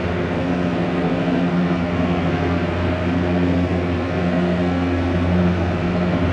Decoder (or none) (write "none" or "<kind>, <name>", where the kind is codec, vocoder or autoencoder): codec, SNAC